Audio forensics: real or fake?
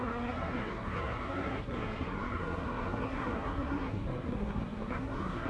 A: fake